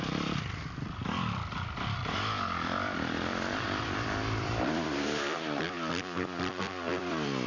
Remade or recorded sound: remade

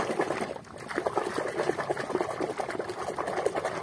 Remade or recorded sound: recorded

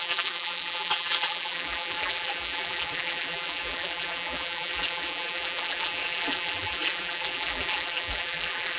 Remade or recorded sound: remade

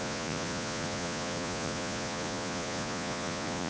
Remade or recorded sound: remade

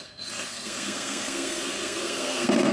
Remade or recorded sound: remade